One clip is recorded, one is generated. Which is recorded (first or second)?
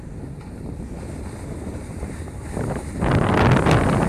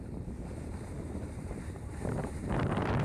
first